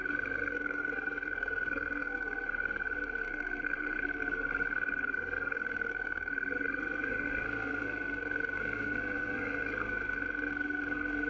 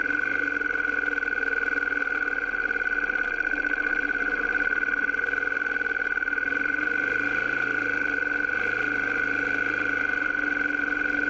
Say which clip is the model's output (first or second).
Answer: first